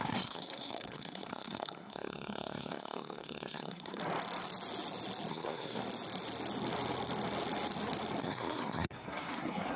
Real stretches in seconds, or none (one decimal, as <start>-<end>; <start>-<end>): 4.0-5.3; 5.8-8.2